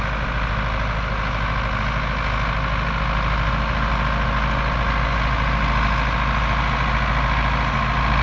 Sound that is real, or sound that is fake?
real